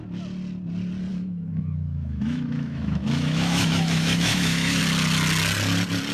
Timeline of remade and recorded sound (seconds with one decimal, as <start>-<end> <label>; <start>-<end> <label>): 0.0-1.1 recorded; 1.1-4.8 remade; 4.8-6.1 recorded